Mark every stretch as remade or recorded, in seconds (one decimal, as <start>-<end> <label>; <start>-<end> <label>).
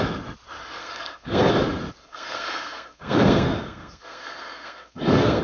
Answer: 0.0-0.8 recorded; 0.8-1.5 remade; 1.5-2.0 recorded; 2.0-5.4 remade